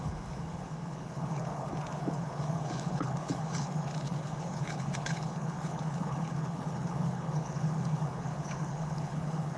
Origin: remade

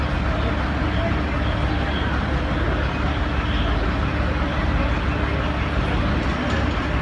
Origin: recorded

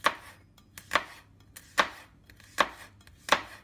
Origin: recorded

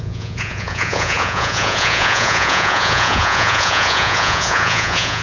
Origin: remade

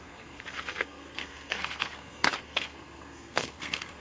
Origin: remade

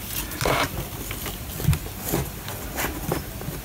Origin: recorded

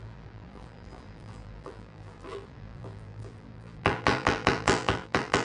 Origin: remade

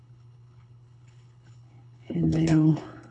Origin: remade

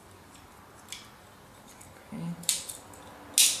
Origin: recorded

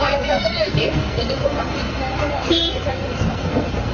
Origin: remade